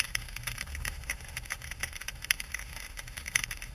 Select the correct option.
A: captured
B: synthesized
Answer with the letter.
B